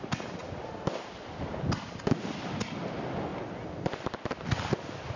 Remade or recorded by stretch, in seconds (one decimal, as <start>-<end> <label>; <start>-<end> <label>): 0.0-5.2 recorded